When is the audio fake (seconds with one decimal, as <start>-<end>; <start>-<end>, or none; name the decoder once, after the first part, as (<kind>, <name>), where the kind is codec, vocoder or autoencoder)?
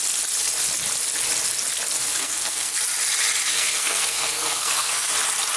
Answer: 2.0-2.8 (codec, SNAC); 3.5-5.1